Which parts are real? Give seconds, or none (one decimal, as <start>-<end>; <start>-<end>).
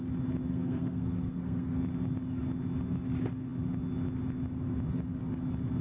0.0-0.5; 1.8-5.8